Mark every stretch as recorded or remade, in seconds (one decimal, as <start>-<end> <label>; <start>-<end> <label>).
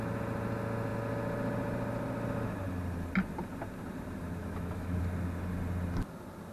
0.0-4.4 recorded; 4.4-5.0 remade; 5.0-6.5 recorded